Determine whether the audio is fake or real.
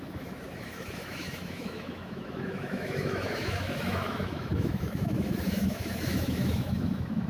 fake